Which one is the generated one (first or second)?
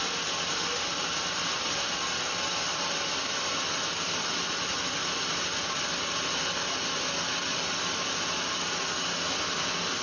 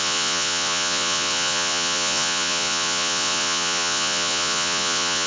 second